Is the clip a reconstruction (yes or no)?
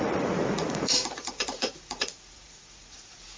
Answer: yes